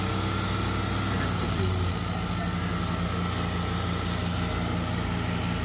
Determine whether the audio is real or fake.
real